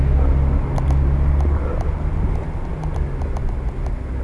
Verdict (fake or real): real